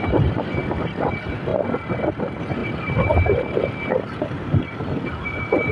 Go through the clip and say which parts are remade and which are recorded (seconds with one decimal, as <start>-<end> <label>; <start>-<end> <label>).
0.0-0.6 remade; 0.6-1.1 recorded; 1.1-1.5 remade; 1.5-2.2 recorded; 2.2-5.7 remade